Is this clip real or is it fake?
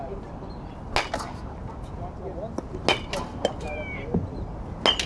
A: real